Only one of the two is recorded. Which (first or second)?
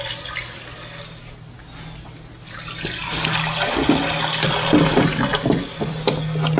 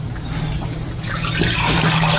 first